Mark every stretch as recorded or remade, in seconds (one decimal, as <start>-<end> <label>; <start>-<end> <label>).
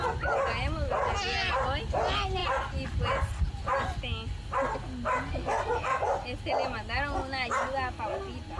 0.0-8.6 recorded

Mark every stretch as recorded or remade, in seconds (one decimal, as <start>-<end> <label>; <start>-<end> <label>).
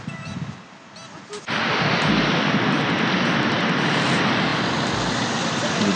0.0-6.0 recorded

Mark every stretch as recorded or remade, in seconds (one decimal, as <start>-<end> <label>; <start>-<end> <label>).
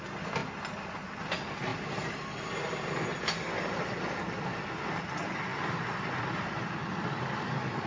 0.0-7.9 recorded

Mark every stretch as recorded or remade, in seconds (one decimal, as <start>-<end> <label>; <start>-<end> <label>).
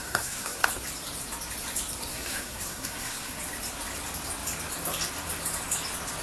0.0-0.6 remade; 0.6-2.1 recorded; 2.1-3.4 remade; 3.4-6.2 recorded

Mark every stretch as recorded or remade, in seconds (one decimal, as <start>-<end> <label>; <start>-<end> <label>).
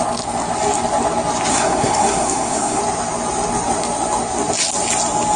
0.0-1.5 recorded; 1.5-2.8 remade; 2.8-5.4 recorded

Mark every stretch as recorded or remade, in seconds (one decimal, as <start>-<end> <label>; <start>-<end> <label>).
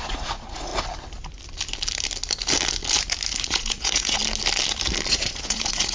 0.0-0.7 remade; 0.7-3.4 recorded; 3.4-4.2 remade; 4.2-5.1 recorded; 5.1-5.9 remade